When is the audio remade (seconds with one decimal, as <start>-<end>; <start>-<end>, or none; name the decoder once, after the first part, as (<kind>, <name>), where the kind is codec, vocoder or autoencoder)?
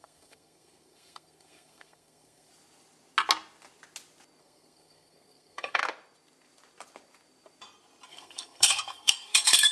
0.0-2.5 (codec, SNAC); 4.4-5.8; 8.1-9.7